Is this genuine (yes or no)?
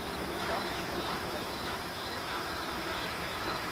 no